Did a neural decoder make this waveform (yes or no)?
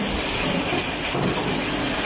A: no